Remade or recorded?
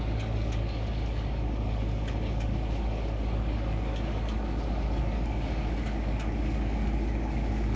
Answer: remade